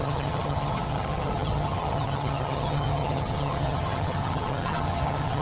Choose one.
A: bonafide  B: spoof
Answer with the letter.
B